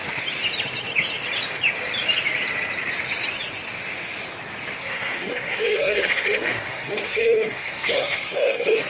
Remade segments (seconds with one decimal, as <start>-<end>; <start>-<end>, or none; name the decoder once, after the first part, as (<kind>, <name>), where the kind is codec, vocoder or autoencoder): 4.8-8.9 (codec, SNAC)

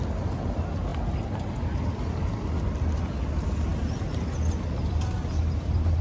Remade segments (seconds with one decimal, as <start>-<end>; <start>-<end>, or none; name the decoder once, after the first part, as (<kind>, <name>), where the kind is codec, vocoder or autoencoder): none

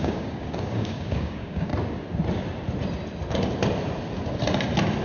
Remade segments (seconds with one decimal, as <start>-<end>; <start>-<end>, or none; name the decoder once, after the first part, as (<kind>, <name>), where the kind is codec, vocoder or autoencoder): 0.0-1.7 (codec, DAC)

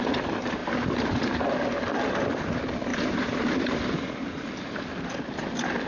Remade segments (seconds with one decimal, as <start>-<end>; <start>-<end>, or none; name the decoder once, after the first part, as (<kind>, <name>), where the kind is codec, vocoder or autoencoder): 0.6-1.4 (vocoder, BigVGAN v2); 2.9-3.5

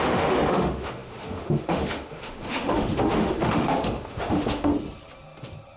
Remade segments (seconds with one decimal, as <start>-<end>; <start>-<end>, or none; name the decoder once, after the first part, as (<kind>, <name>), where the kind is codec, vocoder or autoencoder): 0.0-4.7 (autoencoder, DAC-VAE)